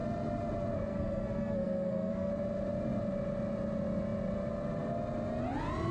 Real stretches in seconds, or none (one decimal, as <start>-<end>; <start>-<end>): 0.0-0.9; 2.3-5.9